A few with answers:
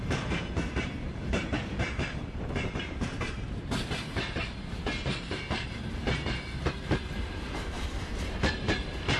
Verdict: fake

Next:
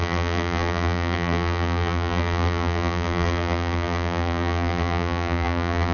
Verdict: fake